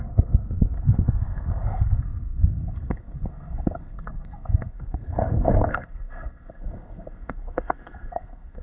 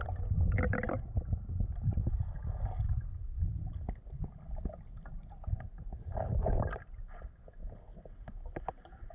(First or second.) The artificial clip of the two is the first